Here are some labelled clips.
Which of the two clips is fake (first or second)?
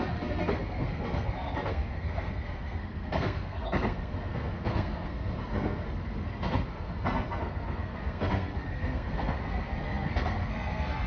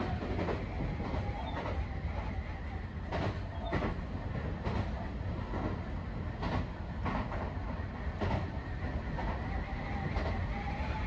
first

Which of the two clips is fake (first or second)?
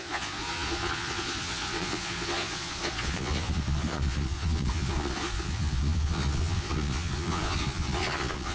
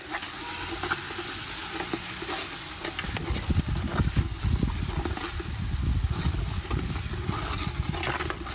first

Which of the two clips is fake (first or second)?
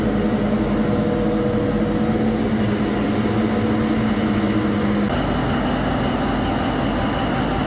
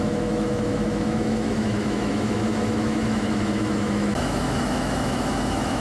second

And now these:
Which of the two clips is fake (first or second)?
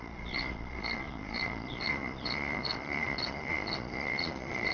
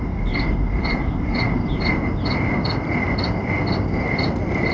first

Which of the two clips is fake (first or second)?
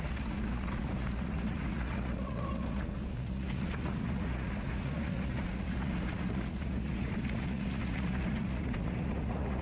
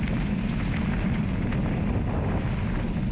first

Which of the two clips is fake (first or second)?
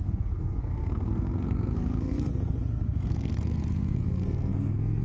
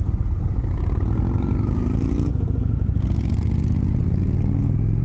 first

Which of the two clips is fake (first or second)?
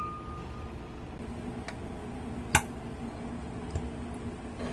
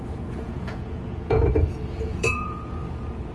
second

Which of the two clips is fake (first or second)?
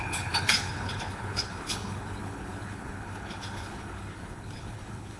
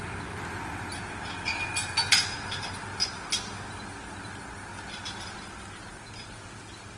first